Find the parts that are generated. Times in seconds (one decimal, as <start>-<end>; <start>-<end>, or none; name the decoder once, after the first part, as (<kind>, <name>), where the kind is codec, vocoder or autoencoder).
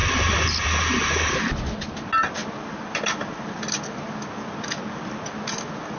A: none